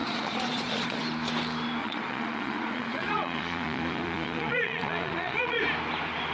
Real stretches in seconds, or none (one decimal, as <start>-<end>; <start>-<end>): 1.0-1.8; 5.6-6.3